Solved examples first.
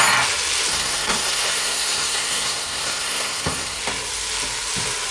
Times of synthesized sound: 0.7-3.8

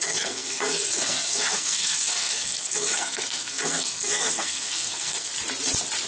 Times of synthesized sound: 0.0-5.3

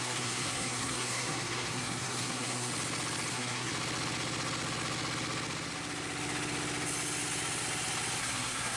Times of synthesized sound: 0.0-2.7; 3.3-3.7; 8.2-8.8

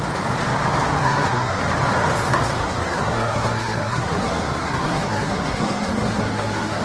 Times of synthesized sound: 1.0-1.6; 2.3-6.8

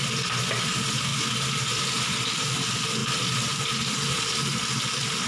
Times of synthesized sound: none

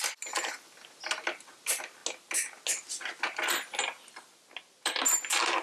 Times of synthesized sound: none

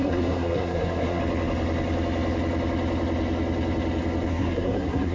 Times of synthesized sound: 0.0-1.2; 4.3-5.1

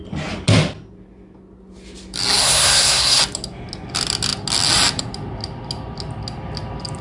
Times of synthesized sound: 2.4-3.2